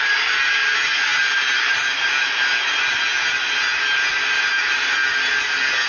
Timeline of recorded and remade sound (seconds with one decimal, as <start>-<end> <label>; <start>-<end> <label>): 0.0-5.9 recorded

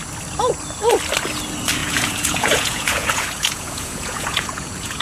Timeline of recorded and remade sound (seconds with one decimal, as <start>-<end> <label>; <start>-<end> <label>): 0.0-1.8 recorded; 1.8-5.0 remade

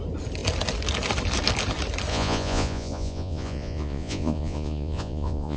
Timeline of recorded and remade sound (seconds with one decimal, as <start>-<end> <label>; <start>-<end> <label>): 0.0-2.1 recorded; 2.1-5.6 remade

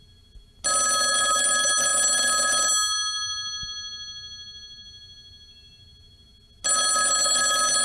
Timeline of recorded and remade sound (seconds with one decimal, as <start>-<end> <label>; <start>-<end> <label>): 0.0-7.8 recorded

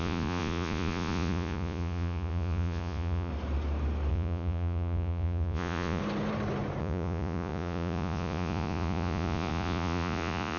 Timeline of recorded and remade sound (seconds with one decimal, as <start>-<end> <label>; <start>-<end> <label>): 0.0-3.3 remade; 3.3-4.1 recorded; 4.1-6.0 remade; 6.0-6.8 recorded; 6.8-10.6 remade

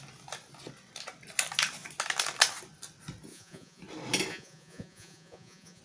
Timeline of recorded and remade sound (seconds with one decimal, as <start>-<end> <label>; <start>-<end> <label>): 0.0-3.3 recorded; 3.3-3.8 remade; 3.8-4.3 recorded; 4.3-5.8 remade

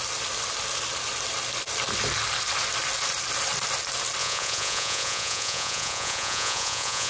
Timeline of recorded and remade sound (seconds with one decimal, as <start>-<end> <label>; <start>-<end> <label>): 0.0-4.2 recorded; 4.2-7.1 remade